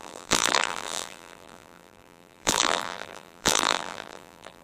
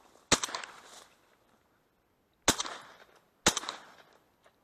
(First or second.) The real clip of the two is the second